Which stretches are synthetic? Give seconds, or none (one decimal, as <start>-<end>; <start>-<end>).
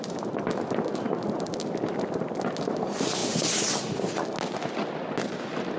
none